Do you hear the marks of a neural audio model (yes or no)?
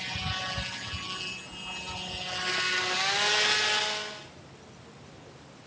no